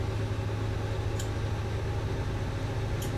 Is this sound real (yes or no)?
yes